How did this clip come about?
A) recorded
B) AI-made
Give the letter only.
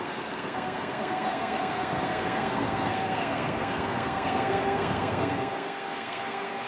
B